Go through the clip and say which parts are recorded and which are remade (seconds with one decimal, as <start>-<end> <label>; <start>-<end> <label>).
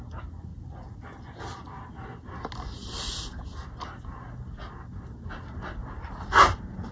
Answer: 0.0-0.5 recorded; 0.5-1.0 remade; 1.0-6.9 recorded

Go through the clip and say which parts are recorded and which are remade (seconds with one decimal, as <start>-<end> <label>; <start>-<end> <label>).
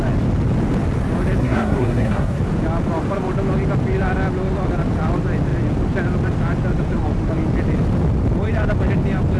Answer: 0.0-1.4 recorded; 1.4-2.4 remade; 2.4-9.4 recorded